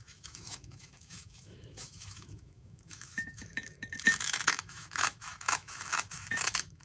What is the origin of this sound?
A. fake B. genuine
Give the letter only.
A